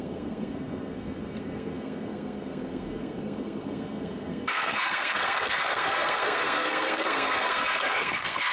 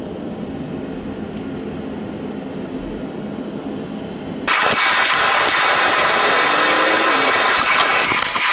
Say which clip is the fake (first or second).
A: first